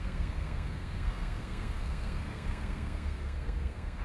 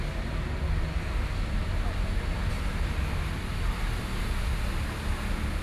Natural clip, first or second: second